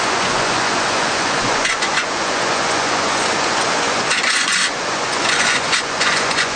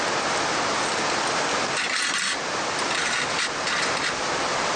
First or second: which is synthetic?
first